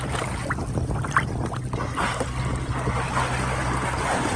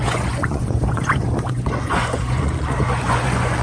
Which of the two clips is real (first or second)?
first